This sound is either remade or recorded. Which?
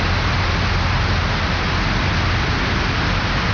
recorded